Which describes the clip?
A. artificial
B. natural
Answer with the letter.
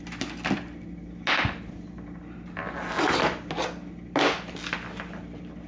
B